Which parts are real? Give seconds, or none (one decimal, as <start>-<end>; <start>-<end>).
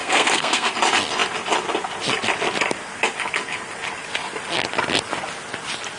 0.7-6.0